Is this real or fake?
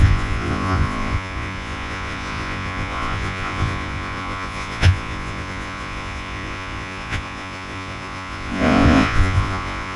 fake